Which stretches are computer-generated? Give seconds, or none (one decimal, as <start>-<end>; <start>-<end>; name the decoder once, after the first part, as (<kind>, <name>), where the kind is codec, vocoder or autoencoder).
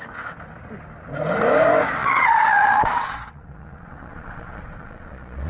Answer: 2.0-5.5 (vocoder, Vocos)